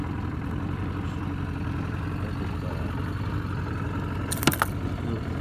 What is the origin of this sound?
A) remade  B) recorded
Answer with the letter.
B